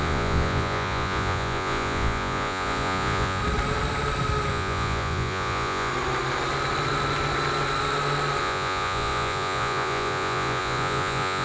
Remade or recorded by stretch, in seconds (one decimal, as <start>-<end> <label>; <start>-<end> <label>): 0.0-3.4 remade; 3.4-4.5 recorded; 4.5-5.9 remade; 5.9-8.4 recorded; 8.4-11.4 remade